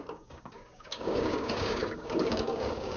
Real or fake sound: fake